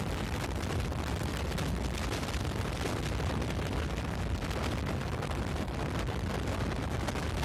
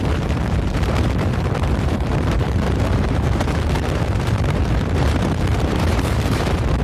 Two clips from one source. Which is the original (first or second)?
first